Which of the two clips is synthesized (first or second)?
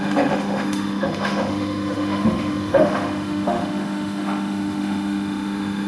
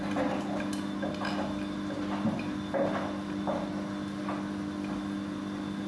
first